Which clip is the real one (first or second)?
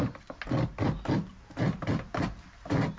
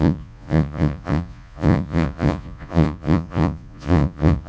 first